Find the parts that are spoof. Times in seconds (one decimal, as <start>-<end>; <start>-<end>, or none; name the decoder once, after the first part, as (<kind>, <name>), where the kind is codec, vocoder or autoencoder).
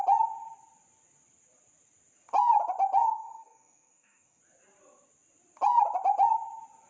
3.0-4.4 (codec, DAC)